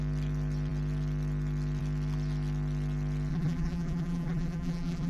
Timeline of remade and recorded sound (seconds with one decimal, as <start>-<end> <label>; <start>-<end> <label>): 0.0-3.3 recorded; 3.3-5.1 remade